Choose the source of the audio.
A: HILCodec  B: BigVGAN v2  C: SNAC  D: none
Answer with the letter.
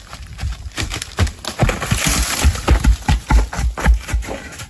D